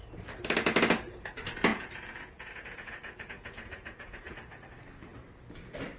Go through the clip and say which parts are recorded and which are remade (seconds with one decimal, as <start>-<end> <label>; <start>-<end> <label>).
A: 0.0-1.7 recorded; 1.7-4.3 remade; 4.3-6.0 recorded